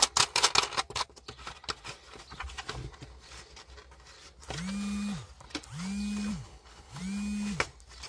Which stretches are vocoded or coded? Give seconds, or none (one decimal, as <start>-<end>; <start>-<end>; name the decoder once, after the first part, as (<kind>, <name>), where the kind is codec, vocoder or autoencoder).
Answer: 6.3-7.0 (codec, HILCodec)